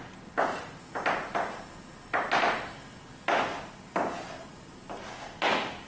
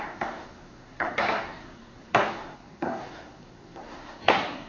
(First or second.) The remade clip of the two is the second